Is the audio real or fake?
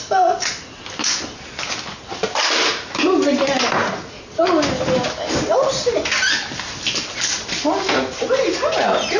real